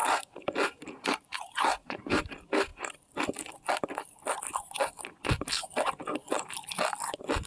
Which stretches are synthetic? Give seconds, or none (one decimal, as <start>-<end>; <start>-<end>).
0.0-2.2